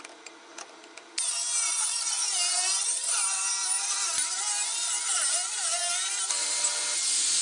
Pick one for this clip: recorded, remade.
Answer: recorded